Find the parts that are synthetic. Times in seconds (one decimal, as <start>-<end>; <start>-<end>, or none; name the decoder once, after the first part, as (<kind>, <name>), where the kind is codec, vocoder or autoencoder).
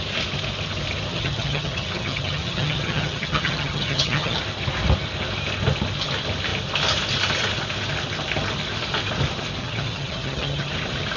1.1-4.4 (vocoder, HiFi-GAN); 9.6-10.7